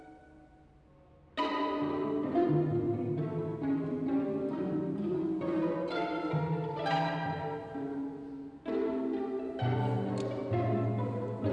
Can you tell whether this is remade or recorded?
recorded